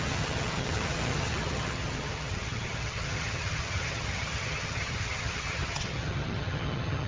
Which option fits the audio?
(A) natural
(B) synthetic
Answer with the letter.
B